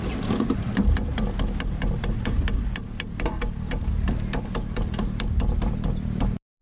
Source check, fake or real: fake